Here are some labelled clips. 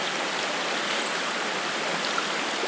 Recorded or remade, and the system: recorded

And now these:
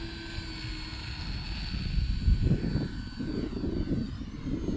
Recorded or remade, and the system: recorded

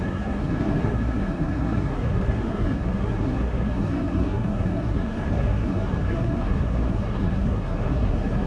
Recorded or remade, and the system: remade, codec, SNAC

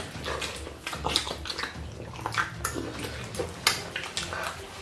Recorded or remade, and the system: recorded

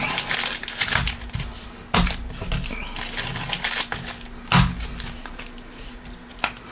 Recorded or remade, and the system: recorded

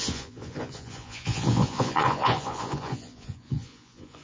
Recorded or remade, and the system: remade, vocoder, Vocos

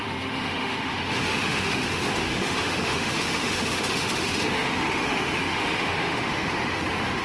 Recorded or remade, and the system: remade, autoencoder, DAC-VAE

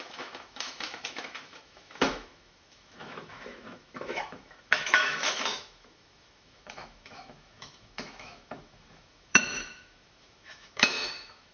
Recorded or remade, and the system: remade, autoencoder, DAC-VAE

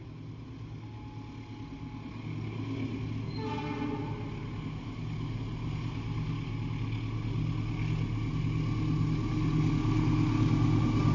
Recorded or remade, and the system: recorded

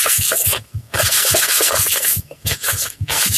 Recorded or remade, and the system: remade, codec, SNAC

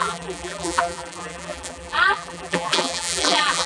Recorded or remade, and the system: remade, vocoder, BigVGAN v2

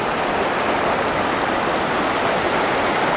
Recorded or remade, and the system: recorded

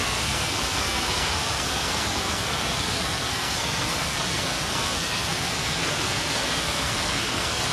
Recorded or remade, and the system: remade, codec, SNAC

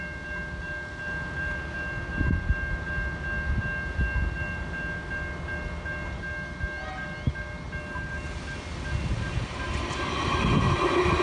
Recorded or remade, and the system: recorded